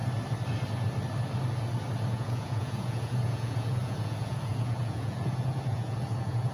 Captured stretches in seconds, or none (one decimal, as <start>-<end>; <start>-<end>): 0.0-2.1